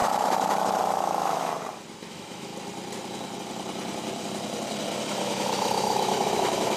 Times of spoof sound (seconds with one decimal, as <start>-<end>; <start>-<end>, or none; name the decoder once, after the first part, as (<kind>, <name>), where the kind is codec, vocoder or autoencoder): 0.0-1.5 (autoencoder, DAC-VAE); 2.1-2.5; 5.0-6.8

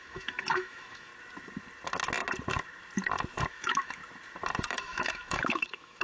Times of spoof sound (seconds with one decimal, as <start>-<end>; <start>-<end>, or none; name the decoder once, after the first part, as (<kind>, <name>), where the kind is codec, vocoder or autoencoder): 0.0-1.1 (autoencoder, DAC-VAE); 3.5-4.0; 4.7-6.0